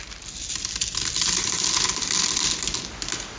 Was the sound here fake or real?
real